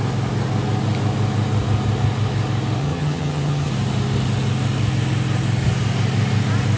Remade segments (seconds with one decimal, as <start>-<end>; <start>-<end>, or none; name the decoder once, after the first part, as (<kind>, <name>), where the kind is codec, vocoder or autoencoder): 2.8-3.7 (vocoder, HiFi-GAN)